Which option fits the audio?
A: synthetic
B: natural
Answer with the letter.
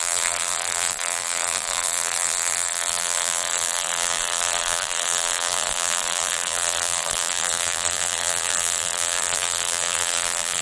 A